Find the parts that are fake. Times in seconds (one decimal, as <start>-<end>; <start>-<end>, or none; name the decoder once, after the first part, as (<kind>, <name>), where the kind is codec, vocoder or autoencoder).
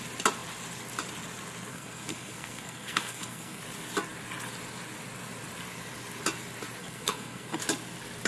1.7-3.6 (codec, SNAC); 6.8-7.6